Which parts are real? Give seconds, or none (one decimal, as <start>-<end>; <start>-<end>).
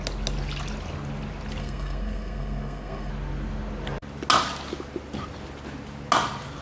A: 0.0-1.6; 3.1-6.6